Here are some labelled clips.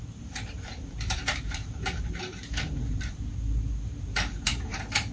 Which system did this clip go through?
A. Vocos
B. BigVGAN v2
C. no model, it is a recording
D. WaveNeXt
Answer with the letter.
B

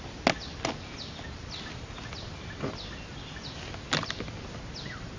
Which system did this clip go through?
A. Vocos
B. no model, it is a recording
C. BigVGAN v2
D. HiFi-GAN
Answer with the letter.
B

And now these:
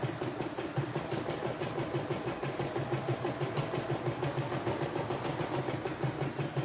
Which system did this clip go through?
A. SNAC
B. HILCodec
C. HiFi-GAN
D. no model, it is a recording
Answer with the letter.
D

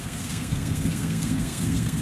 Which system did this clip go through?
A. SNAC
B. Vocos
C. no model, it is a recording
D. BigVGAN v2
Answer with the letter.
A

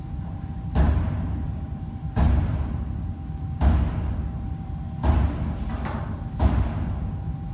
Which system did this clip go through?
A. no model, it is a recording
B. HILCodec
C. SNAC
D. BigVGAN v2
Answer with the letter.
D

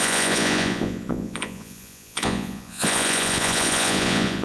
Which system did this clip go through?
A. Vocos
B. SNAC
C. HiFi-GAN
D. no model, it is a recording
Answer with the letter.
A